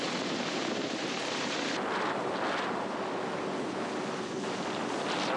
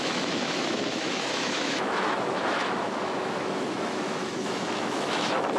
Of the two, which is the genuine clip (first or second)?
first